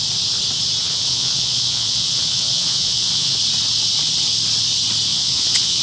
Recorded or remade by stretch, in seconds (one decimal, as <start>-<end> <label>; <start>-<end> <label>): 0.0-0.8 recorded; 0.8-3.4 remade; 3.4-5.1 recorded; 5.1-5.8 remade